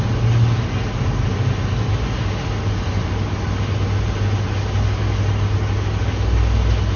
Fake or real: real